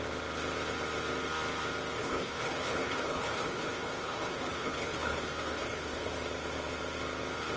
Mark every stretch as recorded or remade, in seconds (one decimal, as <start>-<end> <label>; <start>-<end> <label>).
0.0-2.0 recorded; 2.0-6.1 remade; 6.1-7.6 recorded